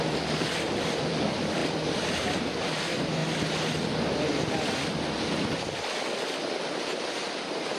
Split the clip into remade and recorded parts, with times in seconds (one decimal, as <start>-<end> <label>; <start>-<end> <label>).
0.0-1.6 remade; 1.6-2.6 recorded; 2.6-3.2 remade; 3.2-7.3 recorded; 7.3-7.8 remade